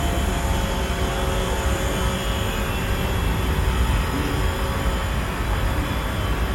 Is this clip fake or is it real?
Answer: real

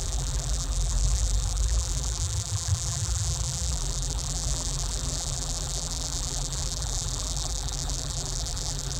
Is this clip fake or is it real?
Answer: fake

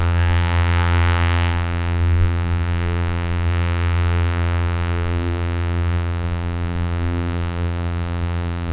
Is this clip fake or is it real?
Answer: fake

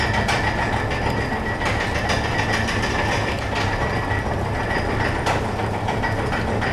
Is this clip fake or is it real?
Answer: real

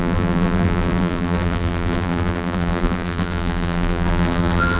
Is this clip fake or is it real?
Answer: fake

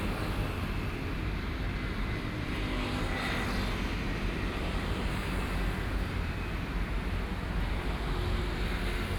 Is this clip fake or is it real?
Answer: real